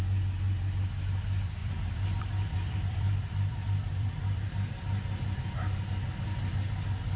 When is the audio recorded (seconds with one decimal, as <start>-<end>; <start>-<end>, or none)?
0.0-1.6; 5.9-7.2